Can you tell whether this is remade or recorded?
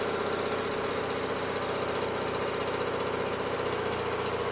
recorded